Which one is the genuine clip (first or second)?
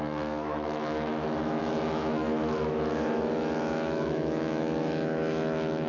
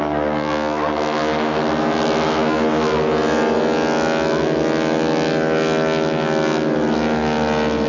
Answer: second